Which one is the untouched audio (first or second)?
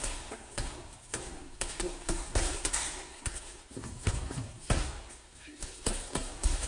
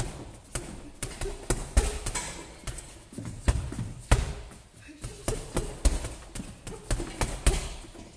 second